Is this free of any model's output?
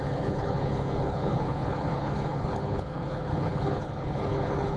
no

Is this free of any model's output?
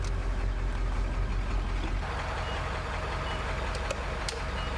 yes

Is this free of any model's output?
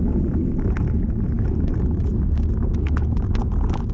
yes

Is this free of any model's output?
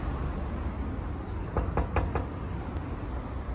yes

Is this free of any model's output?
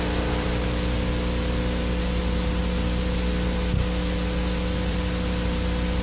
yes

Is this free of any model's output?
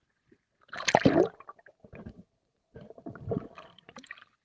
no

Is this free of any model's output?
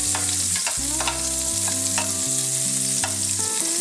yes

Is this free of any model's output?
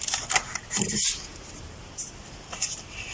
yes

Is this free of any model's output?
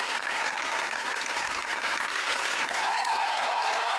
no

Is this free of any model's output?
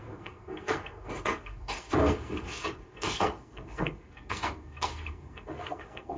no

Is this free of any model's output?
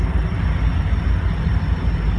yes